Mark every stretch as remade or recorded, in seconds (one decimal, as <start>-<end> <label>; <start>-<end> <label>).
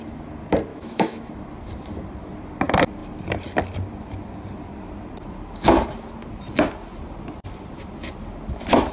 0.0-0.7 recorded; 0.7-1.3 remade; 1.3-8.9 recorded